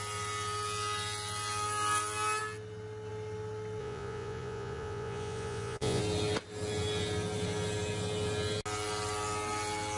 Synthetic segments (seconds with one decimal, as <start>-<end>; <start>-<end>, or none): 3.8-6.0